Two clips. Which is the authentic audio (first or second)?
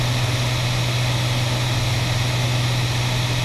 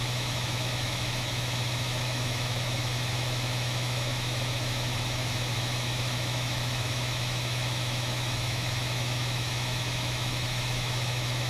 first